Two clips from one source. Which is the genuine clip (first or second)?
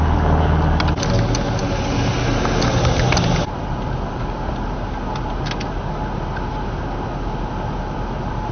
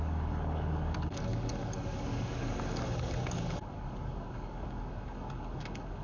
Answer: first